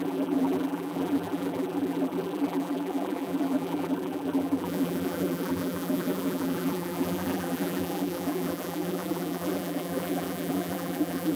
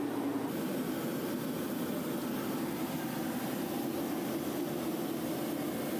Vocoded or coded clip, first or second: first